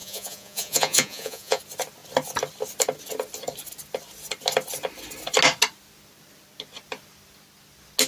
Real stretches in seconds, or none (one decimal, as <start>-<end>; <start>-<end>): 1.6-8.1